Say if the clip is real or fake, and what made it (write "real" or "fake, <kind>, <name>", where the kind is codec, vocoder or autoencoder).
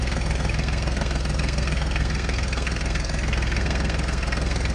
fake, codec, SNAC